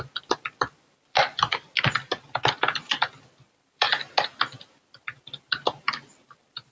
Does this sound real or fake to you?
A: fake